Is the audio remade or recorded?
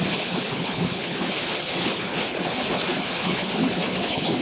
remade